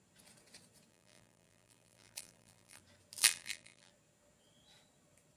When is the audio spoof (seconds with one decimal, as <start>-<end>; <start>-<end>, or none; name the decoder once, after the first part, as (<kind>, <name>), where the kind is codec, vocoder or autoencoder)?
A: 0.9-2.8 (vocoder, BigVGAN v2); 3.2-3.9